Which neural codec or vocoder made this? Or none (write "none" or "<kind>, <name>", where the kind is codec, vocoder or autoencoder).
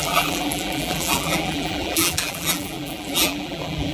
vocoder, BigVGAN v2